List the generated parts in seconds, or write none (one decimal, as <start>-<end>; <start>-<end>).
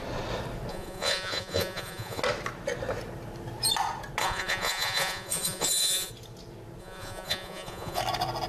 0.7-2.2; 4.2-6.1; 6.8-8.0